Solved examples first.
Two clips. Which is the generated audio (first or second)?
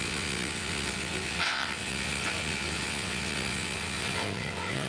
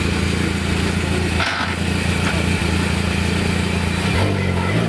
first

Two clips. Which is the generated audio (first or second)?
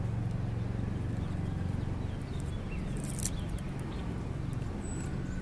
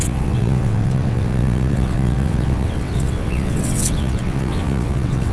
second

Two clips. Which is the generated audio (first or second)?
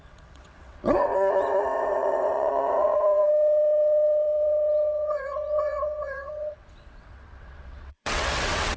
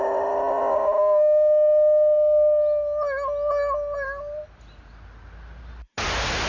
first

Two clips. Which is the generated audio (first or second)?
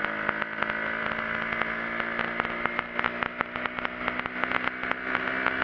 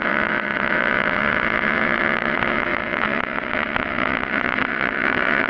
second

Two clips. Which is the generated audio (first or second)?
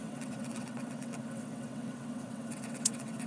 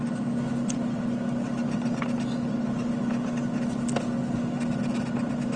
first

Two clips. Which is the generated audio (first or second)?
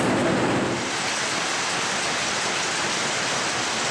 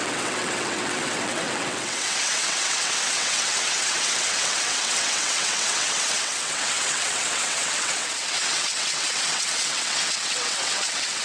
second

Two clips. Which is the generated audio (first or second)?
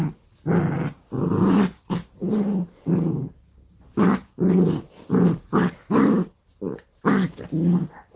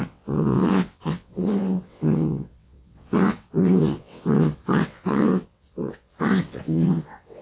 second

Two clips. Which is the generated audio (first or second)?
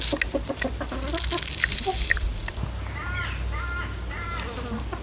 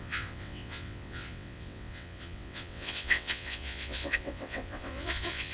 second